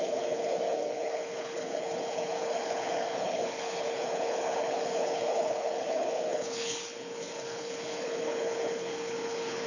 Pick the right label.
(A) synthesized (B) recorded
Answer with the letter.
A